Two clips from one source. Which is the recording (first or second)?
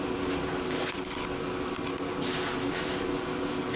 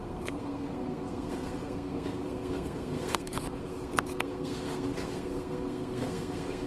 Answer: first